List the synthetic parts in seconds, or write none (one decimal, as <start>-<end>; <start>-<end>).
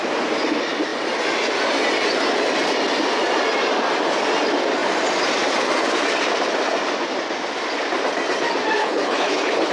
8.8-9.7